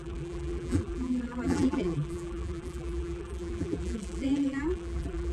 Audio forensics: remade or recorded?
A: remade